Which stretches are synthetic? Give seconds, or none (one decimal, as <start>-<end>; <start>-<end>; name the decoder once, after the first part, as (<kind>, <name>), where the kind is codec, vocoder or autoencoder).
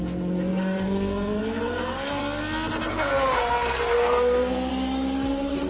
0.0-2.2 (codec, SNAC); 2.9-4.7